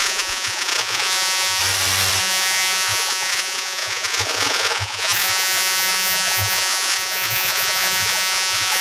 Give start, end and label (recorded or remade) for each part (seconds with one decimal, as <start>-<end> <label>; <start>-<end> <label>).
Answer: 0.0-1.6 remade; 1.6-2.2 recorded; 2.2-8.8 remade